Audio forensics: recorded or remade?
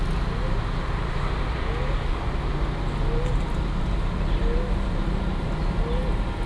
recorded